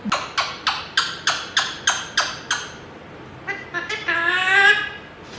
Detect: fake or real real